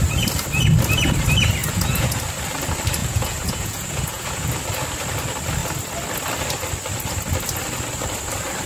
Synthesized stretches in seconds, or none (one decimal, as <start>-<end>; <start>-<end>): 1.6-2.2; 3.0-4.5